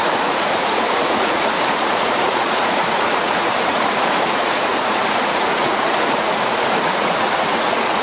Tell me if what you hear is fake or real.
fake